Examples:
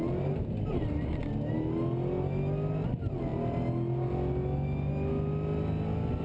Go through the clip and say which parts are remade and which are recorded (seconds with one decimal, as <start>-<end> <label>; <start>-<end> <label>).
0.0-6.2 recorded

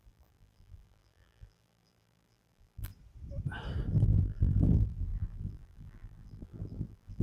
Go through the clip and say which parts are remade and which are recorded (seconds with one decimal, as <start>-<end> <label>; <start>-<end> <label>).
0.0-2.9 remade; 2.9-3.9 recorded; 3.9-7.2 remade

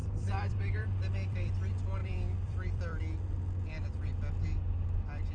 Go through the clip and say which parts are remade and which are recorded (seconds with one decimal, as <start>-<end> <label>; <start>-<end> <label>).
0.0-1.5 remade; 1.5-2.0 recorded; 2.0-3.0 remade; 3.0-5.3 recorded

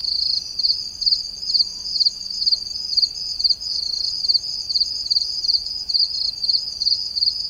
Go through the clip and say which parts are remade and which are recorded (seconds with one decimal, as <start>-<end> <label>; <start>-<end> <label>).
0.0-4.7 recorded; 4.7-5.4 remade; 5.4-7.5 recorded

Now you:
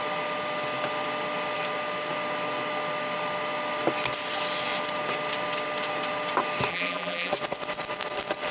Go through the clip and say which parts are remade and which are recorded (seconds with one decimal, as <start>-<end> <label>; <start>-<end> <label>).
0.0-6.7 recorded; 6.7-7.3 remade; 7.3-8.5 recorded